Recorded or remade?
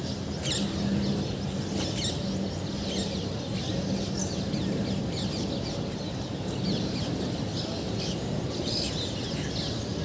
recorded